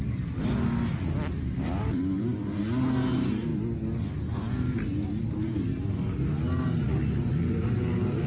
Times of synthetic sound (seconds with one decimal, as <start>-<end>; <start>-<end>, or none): none